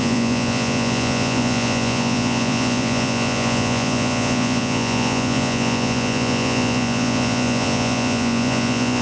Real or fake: fake